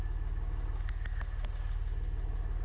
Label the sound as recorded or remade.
recorded